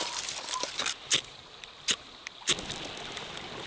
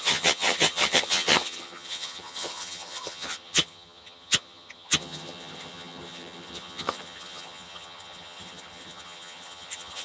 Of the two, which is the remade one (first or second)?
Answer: second